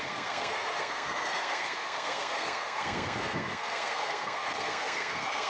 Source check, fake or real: fake